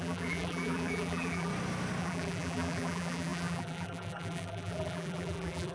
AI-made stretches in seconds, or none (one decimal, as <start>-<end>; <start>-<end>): 0.0-1.5; 2.0-5.7